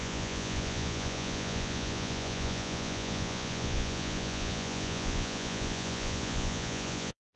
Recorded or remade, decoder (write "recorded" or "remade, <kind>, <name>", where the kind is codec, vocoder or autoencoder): remade, vocoder, Vocos